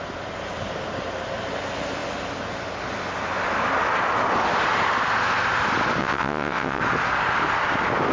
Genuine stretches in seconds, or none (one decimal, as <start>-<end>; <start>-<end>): 0.0-6.0; 6.8-8.1